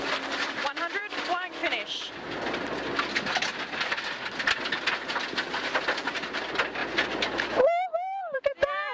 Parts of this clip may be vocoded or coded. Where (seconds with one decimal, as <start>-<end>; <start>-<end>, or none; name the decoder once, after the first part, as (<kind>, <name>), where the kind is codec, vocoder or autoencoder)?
0.0-1.6 (vocoder, BigVGAN v2); 6.1-8.9